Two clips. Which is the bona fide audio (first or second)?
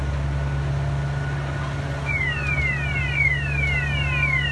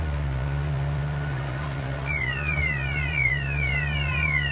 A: first